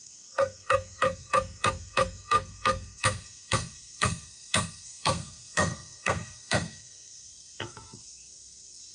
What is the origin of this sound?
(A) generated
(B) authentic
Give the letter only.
A